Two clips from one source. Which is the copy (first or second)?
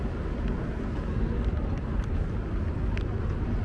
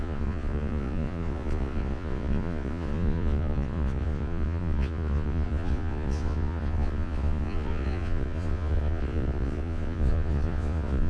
second